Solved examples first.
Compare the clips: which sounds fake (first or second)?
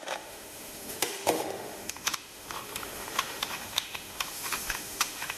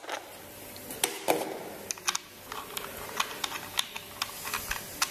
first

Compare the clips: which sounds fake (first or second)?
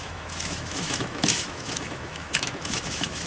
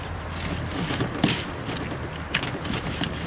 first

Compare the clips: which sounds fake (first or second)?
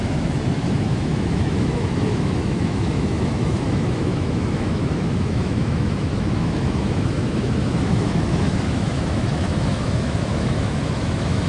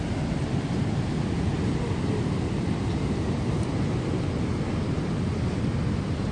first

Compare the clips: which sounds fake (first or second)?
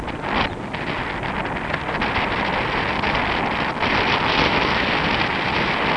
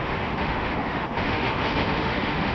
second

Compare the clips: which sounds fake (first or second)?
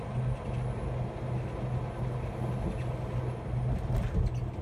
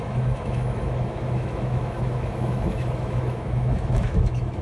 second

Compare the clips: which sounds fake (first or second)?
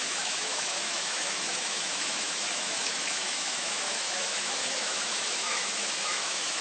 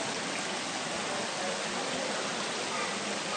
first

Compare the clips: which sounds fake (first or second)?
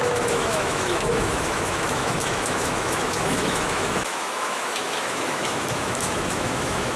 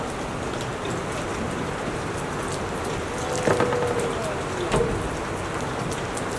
first